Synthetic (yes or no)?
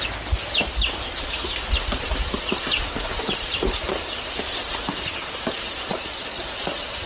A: no